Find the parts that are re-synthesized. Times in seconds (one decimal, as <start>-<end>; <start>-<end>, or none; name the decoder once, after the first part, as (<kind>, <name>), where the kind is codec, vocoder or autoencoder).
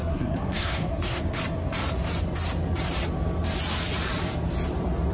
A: 0.0-1.2 (codec, SNAC)